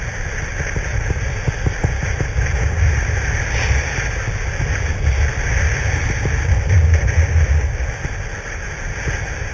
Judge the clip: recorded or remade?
recorded